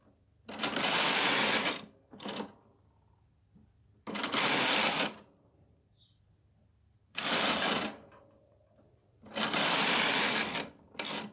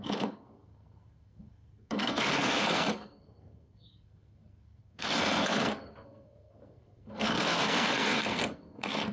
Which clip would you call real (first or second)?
first